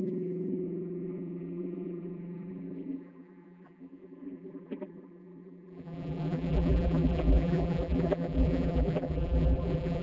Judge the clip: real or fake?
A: fake